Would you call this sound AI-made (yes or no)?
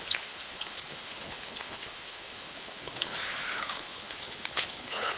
yes